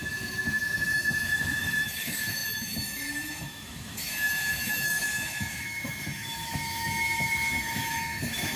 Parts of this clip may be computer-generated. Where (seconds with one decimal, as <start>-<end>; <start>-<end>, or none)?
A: 0.0-8.6